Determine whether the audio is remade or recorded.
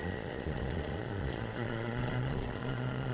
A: remade